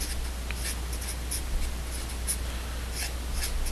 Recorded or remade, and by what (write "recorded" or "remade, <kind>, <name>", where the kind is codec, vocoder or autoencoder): recorded